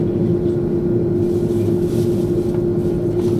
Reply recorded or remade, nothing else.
recorded